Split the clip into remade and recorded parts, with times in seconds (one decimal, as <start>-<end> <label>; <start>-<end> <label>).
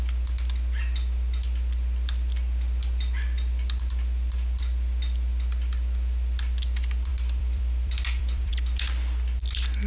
0.0-7.1 recorded; 7.1-8.5 remade; 8.5-9.9 recorded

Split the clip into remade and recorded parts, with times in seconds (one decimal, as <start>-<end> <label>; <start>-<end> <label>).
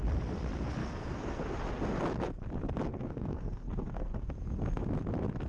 0.0-0.8 recorded; 0.8-1.4 remade; 1.4-2.9 recorded; 2.9-4.3 remade; 4.3-5.5 recorded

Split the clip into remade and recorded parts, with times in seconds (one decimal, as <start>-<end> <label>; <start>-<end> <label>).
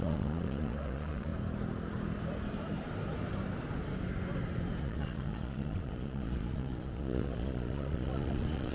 0.0-1.3 remade; 1.3-4.8 recorded; 4.8-8.7 remade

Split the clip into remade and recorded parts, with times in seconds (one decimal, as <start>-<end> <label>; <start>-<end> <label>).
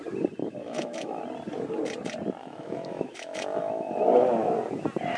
0.0-0.4 recorded; 0.4-1.2 remade; 1.2-2.4 recorded; 2.4-4.0 remade; 4.0-5.2 recorded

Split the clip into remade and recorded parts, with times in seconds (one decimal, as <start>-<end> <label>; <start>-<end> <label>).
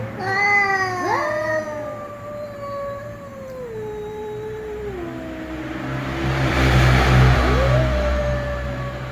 0.0-3.0 recorded; 3.0-7.4 remade; 7.4-9.1 recorded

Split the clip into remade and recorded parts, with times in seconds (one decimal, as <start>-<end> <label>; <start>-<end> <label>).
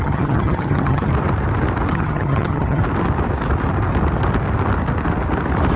0.0-1.1 remade; 1.1-1.9 recorded; 1.9-2.8 remade; 2.8-5.8 recorded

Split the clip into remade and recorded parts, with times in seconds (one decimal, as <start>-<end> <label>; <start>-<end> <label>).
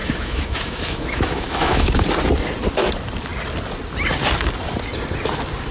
0.0-1.9 remade; 1.9-5.7 recorded